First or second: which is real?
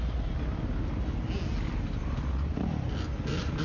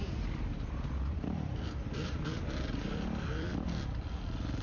first